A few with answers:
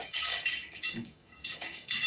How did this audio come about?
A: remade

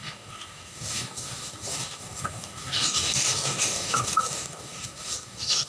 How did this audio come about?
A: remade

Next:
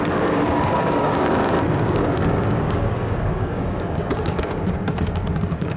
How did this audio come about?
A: remade